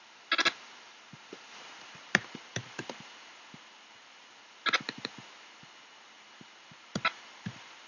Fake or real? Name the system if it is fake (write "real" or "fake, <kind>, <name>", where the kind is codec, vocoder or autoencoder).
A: real